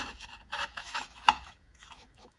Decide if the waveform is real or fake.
fake